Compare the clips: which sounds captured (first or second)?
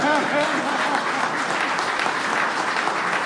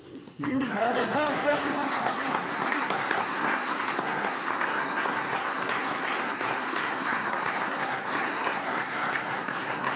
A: first